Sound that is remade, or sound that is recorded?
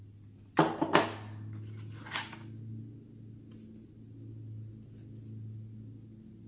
recorded